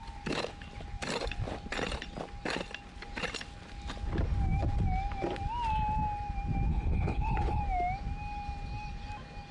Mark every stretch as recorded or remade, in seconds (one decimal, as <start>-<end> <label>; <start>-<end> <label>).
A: 0.0-6.7 recorded; 6.7-7.6 remade; 7.6-9.5 recorded